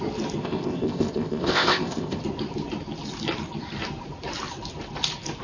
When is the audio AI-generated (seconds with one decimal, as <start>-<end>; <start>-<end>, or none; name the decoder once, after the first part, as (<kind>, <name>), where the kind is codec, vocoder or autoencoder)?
0.4-2.2 (codec, ZipCodec)